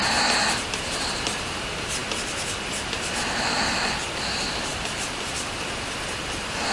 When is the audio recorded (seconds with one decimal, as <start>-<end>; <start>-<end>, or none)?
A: 1.1-4.7; 5.9-6.7